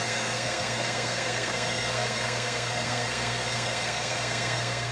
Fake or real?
fake